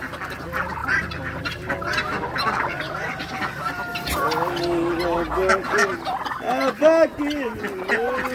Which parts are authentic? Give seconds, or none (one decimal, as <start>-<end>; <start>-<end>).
0.0-0.8; 1.4-8.3